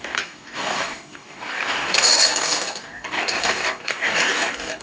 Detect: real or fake fake